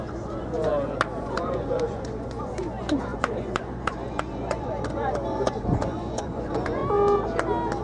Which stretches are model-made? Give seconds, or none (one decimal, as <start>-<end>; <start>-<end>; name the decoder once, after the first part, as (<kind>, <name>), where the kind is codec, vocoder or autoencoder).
0.0-0.7 (vocoder, Vocos); 1.2-6.8